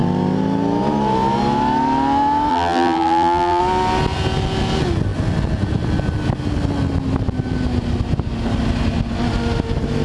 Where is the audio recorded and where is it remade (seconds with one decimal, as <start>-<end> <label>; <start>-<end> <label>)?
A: 0.0-2.5 recorded; 2.5-3.6 remade; 3.6-10.0 recorded